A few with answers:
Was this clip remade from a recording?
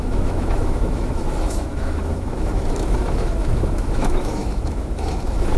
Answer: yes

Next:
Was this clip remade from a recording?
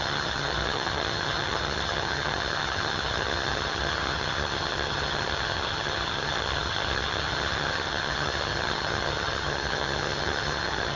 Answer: yes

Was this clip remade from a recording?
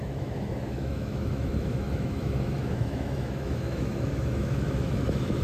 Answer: yes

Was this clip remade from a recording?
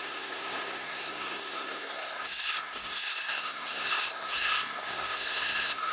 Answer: yes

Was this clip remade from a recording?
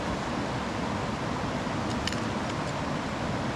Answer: no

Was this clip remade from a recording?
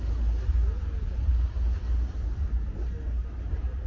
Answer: no